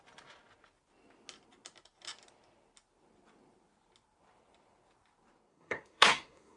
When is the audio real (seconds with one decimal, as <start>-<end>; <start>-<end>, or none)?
0.0-5.5